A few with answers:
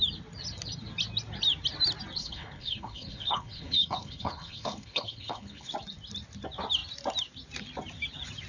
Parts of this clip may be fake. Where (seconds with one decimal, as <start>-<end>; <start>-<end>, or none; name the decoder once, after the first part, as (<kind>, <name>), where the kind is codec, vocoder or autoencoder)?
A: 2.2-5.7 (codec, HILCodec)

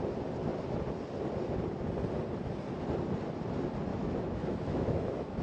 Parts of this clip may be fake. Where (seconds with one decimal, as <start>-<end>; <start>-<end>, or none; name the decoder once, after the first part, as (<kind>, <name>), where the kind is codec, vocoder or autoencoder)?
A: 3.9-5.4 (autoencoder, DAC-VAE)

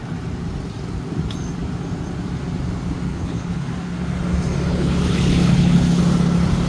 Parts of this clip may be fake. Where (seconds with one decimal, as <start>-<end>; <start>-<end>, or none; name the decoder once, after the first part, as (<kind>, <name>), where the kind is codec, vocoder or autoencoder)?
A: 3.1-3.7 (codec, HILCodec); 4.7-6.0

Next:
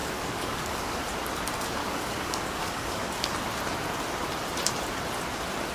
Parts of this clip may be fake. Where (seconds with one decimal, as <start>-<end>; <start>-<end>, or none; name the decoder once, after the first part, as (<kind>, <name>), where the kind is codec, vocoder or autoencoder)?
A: 0.0-1.0 (codec, DAC); 1.8-3.3